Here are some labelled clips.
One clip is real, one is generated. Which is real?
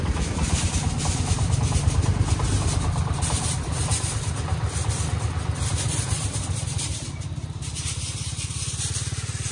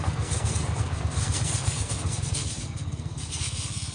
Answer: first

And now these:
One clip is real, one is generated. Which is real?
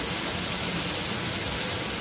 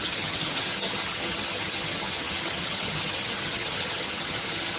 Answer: first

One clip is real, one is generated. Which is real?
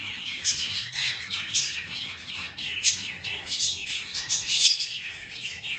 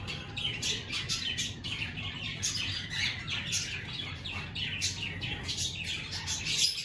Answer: second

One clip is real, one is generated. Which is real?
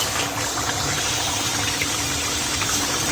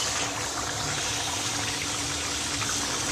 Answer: second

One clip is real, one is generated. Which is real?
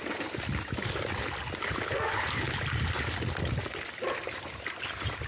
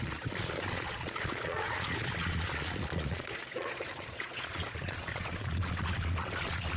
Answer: first